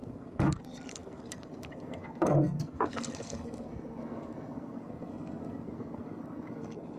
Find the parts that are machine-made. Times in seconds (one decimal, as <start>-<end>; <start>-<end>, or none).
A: 0.0-7.0